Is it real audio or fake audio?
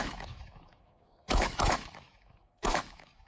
fake